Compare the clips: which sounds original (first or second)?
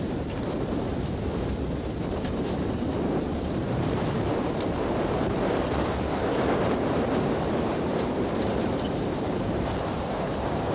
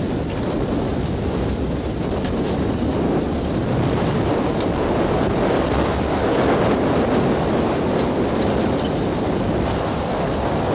second